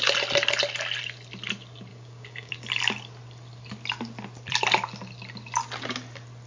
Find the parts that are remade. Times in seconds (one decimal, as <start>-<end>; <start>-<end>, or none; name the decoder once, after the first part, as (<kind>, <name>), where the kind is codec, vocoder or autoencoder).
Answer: 1.9-2.5 (codec, DAC)